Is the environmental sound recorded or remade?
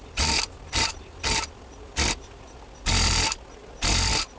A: recorded